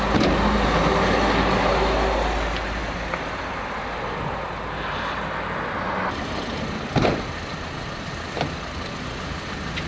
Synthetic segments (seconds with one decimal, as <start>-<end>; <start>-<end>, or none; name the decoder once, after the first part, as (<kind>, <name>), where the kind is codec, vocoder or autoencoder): none